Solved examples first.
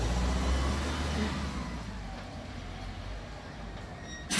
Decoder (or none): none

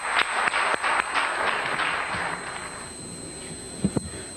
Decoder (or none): none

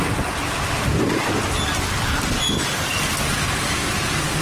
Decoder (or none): none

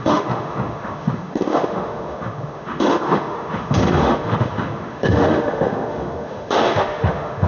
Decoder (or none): autoencoder, DAC-VAE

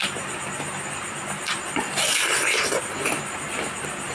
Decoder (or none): none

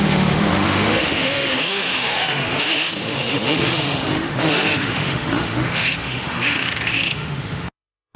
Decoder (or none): autoencoder, DAC-VAE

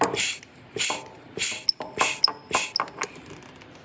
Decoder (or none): none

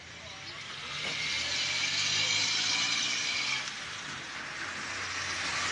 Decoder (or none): none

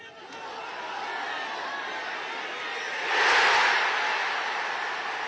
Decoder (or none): none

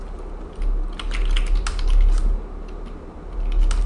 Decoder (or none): none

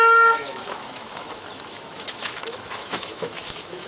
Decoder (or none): autoencoder, DAC-VAE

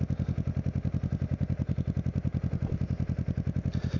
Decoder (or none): none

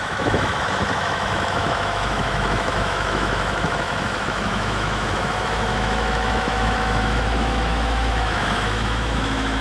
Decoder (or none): autoencoder, DAC-VAE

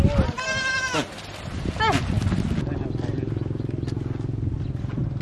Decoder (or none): none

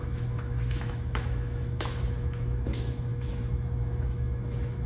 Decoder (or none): autoencoder, DAC-VAE